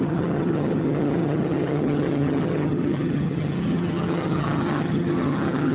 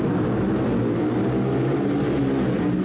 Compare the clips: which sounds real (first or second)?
second